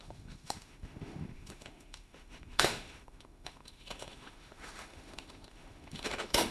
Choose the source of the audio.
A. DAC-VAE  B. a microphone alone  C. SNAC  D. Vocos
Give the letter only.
A